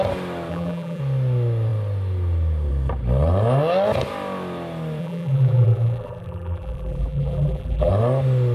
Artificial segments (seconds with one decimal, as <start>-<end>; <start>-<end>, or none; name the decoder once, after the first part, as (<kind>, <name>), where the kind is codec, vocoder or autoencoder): 0.5-1.0 (vocoder, BigVGAN v2); 5.0-7.9